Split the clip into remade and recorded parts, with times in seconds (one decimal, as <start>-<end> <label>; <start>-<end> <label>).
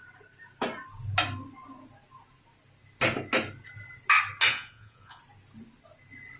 0.0-4.5 recorded; 4.5-5.2 remade; 5.2-6.4 recorded